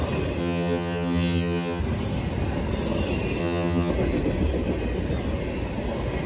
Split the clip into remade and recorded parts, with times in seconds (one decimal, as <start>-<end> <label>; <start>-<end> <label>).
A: 0.0-0.4 recorded; 0.4-1.8 remade; 1.8-3.4 recorded; 3.4-3.9 remade; 3.9-6.3 recorded